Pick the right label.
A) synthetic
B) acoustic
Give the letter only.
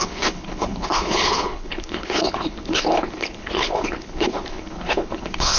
A